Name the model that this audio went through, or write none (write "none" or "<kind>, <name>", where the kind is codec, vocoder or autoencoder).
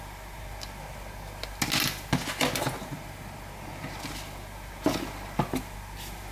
none